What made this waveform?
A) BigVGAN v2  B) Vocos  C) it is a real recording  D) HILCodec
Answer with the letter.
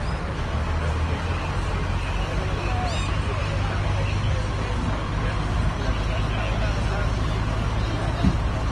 C